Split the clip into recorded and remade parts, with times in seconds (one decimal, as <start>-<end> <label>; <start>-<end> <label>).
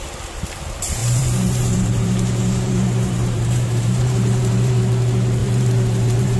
0.0-1.0 recorded; 1.0-4.8 remade; 4.8-5.4 recorded; 5.4-6.4 remade